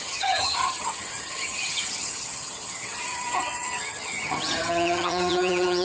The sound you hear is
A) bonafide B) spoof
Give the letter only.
B